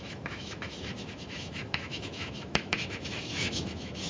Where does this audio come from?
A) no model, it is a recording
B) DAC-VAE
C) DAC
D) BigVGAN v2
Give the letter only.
B